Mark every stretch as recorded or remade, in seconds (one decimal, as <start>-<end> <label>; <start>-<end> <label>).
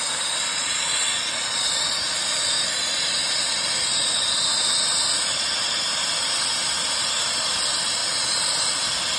0.0-0.5 recorded; 0.5-2.2 remade; 2.2-9.2 recorded